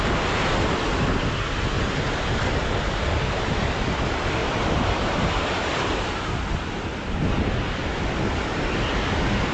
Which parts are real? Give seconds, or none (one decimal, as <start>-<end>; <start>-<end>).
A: 0.0-4.4; 6.0-9.5